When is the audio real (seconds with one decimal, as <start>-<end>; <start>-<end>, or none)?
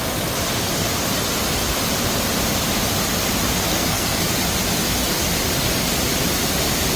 0.0-3.6; 4.2-7.0